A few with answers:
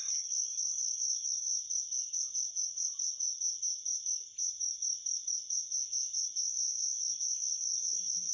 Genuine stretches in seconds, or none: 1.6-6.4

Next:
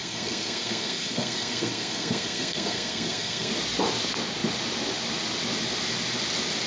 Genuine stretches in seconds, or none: 3.5-6.7

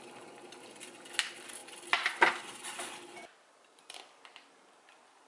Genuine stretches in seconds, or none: 0.0-5.3

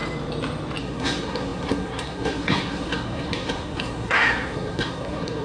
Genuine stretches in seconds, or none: 0.0-0.8

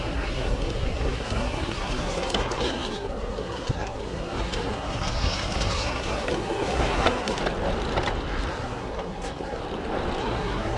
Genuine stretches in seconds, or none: 7.4-8.5; 9.6-10.2